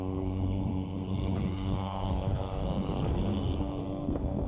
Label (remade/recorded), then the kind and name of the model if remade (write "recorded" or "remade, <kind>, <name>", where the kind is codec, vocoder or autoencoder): remade, codec, SNAC